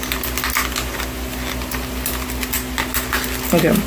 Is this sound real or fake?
real